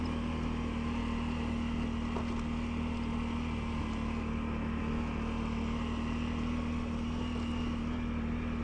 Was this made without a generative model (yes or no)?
yes